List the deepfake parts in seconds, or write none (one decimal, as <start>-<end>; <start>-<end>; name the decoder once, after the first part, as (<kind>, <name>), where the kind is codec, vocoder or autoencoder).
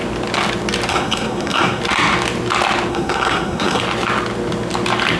0.9-1.8 (codec, SNAC); 2.9-3.8